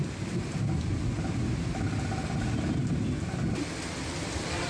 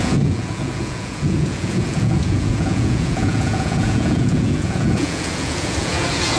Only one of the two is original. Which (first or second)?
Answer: first